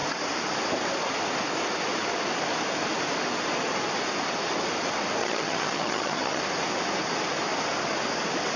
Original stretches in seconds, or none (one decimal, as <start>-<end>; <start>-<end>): 0.0-5.2; 6.4-8.6